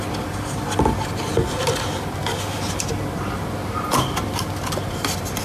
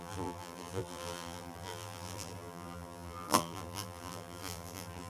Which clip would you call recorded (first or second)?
first